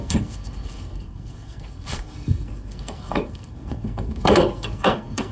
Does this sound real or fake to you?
fake